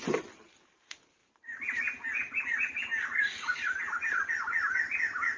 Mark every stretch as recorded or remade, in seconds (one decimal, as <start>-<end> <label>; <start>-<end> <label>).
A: 0.0-1.2 recorded; 1.2-1.8 remade; 1.8-5.4 recorded